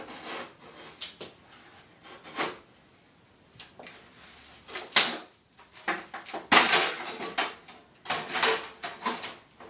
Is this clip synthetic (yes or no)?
no